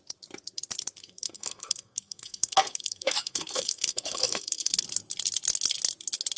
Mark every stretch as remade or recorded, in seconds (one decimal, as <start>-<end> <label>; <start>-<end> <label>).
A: 0.0-1.0 recorded; 1.0-4.8 remade; 4.8-6.4 recorded